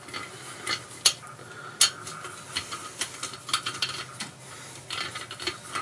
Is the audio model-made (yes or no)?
no